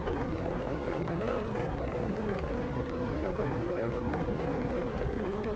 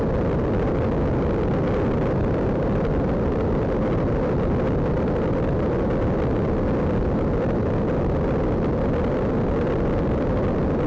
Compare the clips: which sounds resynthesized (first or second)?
first